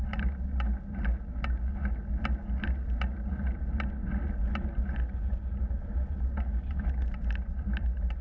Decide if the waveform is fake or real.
real